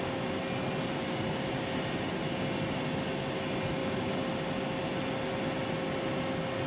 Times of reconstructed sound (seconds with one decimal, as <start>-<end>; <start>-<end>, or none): 3.8-4.3